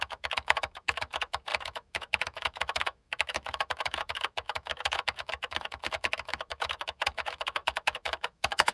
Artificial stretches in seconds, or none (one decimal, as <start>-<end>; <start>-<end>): 0.0-8.7